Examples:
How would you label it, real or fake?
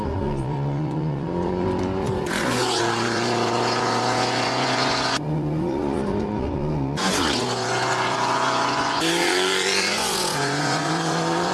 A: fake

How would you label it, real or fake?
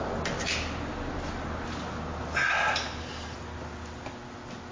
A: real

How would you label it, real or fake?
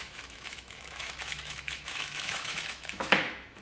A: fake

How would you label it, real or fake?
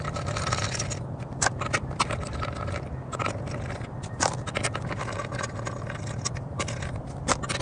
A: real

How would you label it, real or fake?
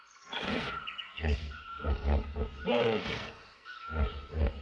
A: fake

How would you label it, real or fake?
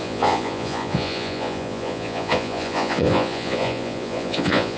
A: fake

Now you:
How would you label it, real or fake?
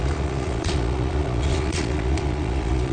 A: fake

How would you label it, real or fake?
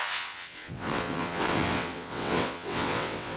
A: fake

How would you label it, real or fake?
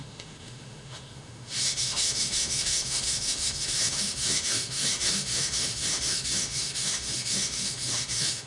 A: fake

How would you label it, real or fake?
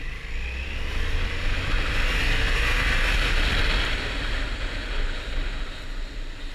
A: real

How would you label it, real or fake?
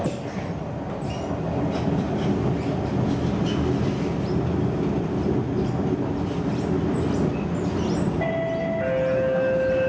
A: real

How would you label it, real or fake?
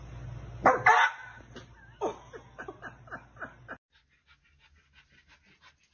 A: real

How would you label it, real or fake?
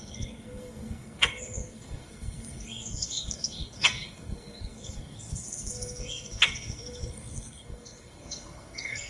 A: fake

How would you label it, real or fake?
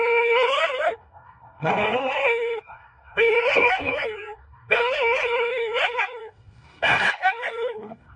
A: fake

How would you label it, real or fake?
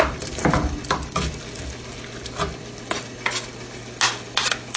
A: real